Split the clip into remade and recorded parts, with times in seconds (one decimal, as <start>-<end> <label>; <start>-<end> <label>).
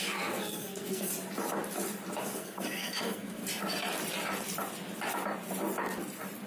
0.0-1.1 remade; 1.1-2.2 recorded; 2.2-3.4 remade; 3.4-6.5 recorded